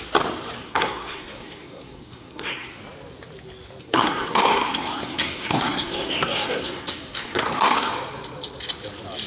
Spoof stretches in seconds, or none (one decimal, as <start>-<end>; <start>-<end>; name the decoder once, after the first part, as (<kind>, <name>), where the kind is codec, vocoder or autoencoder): 0.6-2.8 (codec, SNAC); 3.8-7.9